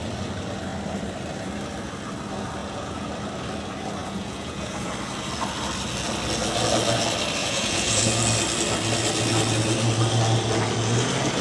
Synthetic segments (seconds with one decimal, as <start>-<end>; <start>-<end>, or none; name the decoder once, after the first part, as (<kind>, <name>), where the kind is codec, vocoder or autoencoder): 2.6-3.1 (vocoder, Vocos); 4.0-4.9; 7.4-8.1